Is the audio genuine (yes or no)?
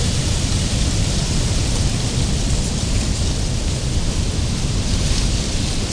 no